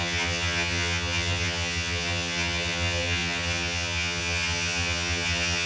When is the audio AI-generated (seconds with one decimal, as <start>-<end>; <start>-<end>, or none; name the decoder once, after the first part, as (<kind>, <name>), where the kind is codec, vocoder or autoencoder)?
0.0-5.7 (vocoder, HiFi-GAN)